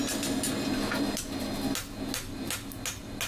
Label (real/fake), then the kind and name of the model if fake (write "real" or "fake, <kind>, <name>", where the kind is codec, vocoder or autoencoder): real